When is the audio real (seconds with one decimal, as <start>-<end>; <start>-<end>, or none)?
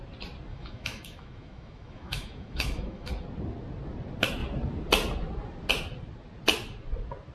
0.0-0.5; 3.1-7.3